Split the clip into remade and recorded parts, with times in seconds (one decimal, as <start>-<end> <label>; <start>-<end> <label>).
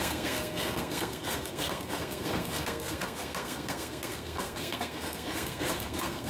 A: 0.0-6.3 remade